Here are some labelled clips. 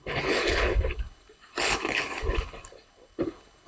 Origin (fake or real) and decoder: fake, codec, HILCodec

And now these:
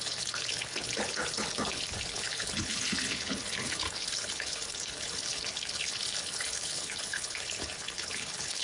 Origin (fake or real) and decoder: fake, codec, HILCodec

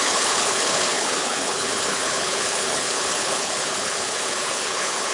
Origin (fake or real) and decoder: fake, codec, HILCodec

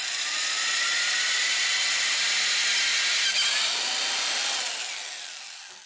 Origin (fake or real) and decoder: real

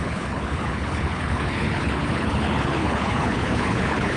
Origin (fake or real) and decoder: fake, codec, HILCodec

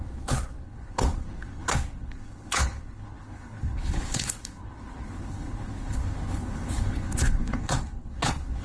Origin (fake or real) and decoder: fake, codec, HILCodec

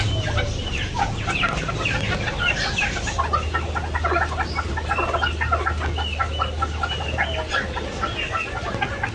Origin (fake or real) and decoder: real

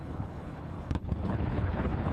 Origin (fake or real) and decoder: fake, codec, HILCodec